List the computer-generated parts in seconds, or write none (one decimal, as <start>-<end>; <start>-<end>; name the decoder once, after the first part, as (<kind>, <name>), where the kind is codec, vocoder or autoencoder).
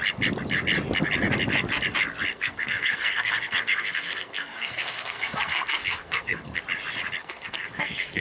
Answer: 2.3-6.6 (codec, SNAC); 7.2-8.2